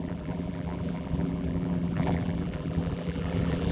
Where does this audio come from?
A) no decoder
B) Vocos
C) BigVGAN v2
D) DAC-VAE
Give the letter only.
C